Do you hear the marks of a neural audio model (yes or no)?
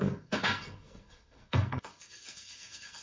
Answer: yes